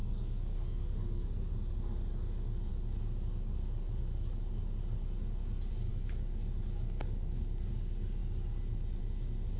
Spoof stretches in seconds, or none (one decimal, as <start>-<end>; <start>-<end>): 0.0-1.5